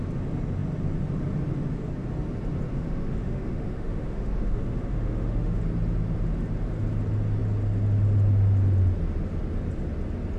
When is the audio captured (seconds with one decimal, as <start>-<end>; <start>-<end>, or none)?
0.0-2.7; 5.6-10.4